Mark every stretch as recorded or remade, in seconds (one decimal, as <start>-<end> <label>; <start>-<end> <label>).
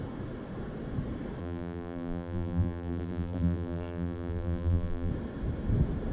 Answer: 0.0-1.4 recorded; 1.4-5.1 remade; 5.1-6.1 recorded